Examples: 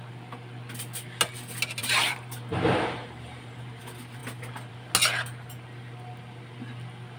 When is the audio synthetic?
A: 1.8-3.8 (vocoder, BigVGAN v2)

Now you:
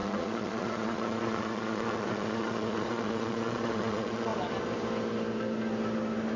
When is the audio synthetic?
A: 0.0-4.3 (vocoder, Vocos)